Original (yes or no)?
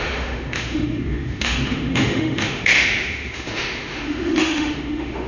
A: no